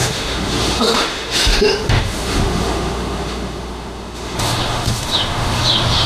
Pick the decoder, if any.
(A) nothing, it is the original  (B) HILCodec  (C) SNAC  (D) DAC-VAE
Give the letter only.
D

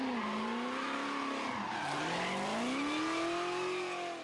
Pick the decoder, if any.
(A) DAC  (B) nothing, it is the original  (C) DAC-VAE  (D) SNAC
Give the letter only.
B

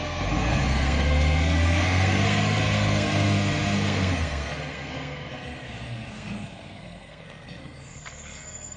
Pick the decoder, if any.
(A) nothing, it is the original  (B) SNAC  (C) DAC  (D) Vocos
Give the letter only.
B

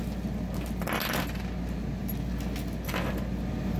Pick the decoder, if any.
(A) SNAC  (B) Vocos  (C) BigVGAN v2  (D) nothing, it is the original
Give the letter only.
D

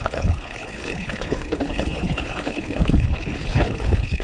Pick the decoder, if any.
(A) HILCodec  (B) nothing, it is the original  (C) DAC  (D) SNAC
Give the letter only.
A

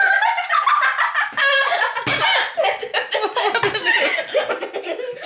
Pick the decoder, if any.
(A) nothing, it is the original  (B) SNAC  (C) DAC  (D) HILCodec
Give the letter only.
A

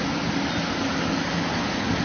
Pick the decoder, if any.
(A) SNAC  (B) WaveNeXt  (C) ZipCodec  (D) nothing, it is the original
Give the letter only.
D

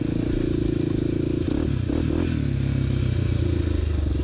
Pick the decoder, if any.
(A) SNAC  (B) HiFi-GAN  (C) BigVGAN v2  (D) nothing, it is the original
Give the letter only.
D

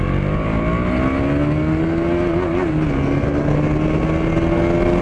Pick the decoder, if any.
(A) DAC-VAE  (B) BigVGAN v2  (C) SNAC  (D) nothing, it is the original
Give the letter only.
D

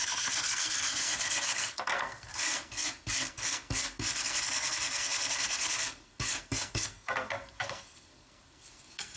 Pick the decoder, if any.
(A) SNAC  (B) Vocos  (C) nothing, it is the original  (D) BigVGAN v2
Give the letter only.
A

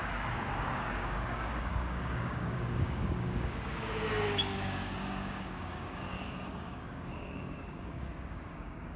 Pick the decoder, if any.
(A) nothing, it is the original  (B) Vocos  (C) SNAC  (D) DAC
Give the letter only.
D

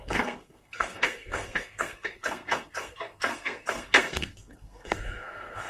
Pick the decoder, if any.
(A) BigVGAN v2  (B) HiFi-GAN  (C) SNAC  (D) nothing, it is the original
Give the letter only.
C